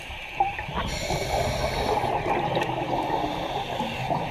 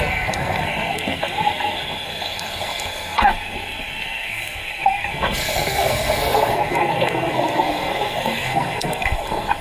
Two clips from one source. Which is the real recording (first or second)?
first